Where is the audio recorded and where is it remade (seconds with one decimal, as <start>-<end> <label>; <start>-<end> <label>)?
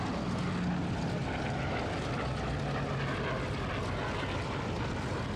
0.0-5.4 recorded